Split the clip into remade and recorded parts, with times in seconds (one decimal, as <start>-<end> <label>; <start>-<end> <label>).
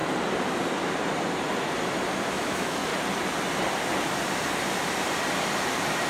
0.0-2.3 recorded; 2.3-2.9 remade; 2.9-6.1 recorded